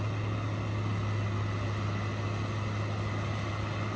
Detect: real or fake real